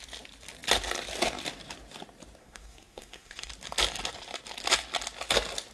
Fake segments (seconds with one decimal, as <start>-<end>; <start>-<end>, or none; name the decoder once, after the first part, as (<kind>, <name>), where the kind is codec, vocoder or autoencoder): 2.4-3.5 (codec, SNAC)